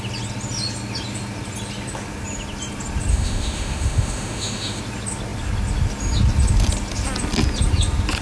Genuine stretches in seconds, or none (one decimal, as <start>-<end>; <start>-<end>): 0.0-3.1; 4.8-8.2